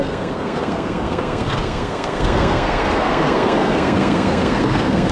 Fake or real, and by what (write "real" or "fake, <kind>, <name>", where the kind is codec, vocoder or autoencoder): fake, codec, SNAC